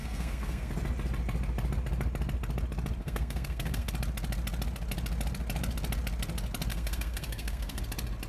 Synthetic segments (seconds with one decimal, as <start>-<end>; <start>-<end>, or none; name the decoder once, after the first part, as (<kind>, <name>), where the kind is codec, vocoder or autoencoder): 0.0-0.7 (codec, SNAC); 3.0-3.9; 6.7-7.8